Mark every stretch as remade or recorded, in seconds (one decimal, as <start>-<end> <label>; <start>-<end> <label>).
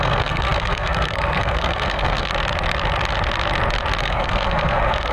0.0-2.3 remade; 2.3-4.0 recorded; 4.0-5.1 remade